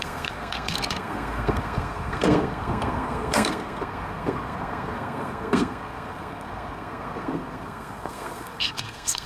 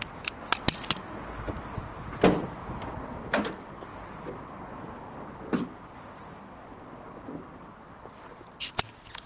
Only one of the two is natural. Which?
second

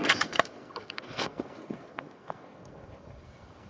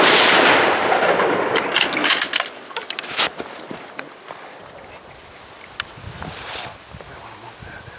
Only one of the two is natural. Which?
second